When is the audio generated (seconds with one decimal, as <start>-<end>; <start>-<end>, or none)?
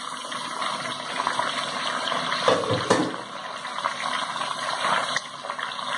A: none